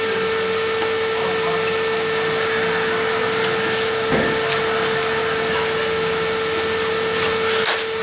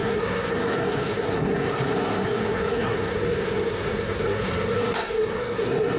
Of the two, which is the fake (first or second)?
second